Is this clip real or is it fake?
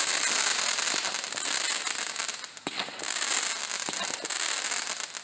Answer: real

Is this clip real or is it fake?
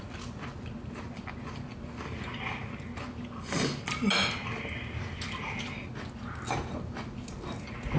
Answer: real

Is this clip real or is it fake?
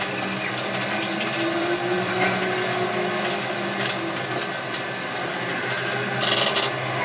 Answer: real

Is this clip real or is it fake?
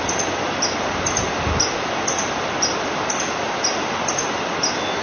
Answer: real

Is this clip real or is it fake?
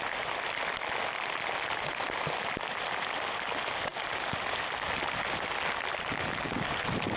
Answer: real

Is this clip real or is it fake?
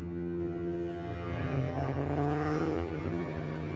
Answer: fake